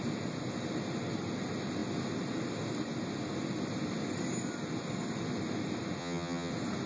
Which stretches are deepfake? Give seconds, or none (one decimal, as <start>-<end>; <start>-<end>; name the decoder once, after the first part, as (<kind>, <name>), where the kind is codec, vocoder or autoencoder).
6.0-6.5 (vocoder, HiFi-GAN)